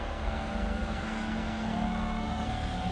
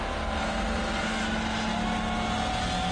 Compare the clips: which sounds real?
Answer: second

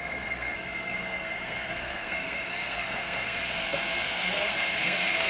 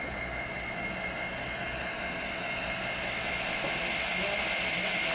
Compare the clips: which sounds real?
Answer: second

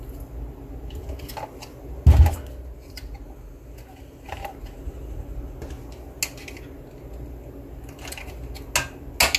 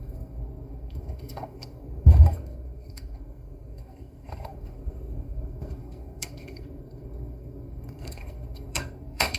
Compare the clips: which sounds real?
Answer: first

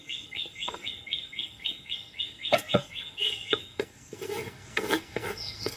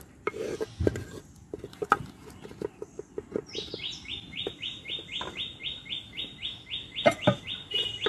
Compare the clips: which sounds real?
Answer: second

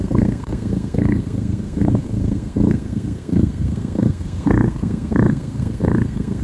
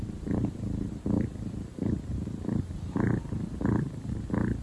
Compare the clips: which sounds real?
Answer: second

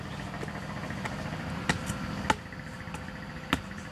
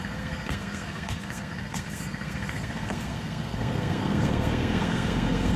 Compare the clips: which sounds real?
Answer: first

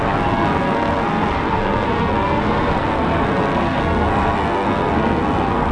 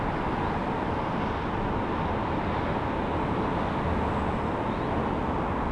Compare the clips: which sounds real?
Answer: second